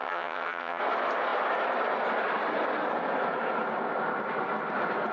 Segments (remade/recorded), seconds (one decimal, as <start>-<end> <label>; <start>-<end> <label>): 0.0-0.8 remade; 0.8-5.1 recorded

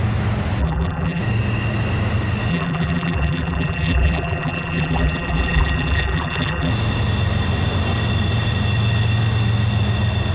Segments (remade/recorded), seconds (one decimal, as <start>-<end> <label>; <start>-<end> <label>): 0.0-0.6 recorded; 0.6-1.2 remade; 1.2-2.5 recorded; 2.5-6.7 remade; 6.7-10.3 recorded

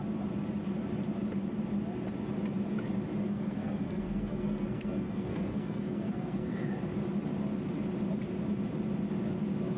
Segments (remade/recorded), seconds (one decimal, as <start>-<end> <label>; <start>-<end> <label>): 0.0-3.2 recorded; 3.2-6.7 remade; 6.7-9.8 recorded

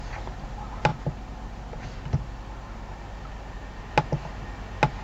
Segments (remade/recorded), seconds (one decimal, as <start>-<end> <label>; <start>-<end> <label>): 0.0-5.0 recorded

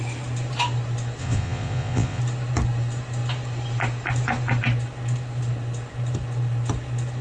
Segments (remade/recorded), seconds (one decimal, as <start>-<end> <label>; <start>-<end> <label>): 0.0-1.2 recorded; 1.2-2.2 remade; 2.2-7.2 recorded

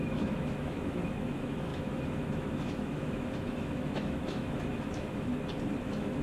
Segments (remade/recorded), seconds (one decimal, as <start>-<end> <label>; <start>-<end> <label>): 0.0-5.3 remade; 5.3-5.8 recorded; 5.8-6.2 remade

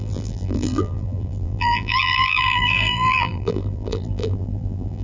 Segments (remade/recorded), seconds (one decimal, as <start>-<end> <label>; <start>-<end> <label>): 0.0-5.0 remade